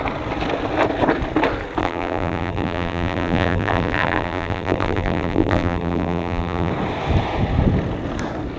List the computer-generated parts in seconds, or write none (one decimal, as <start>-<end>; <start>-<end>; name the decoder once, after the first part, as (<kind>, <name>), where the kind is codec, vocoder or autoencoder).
1.8-6.7 (vocoder, BigVGAN v2)